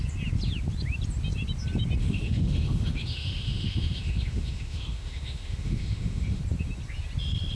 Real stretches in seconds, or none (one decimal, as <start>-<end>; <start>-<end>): 0.0-2.0; 6.4-7.6